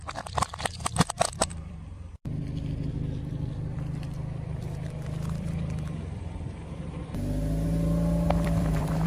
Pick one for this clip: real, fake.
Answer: fake